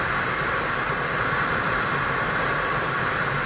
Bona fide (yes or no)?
no